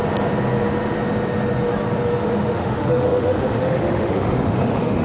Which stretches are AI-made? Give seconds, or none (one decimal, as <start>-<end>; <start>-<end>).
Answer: 2.2-5.0